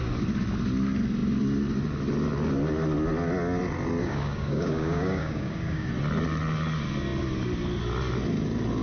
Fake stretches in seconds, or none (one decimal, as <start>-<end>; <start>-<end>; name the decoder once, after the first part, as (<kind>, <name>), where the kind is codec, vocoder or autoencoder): 4.0-5.9 (codec, DAC)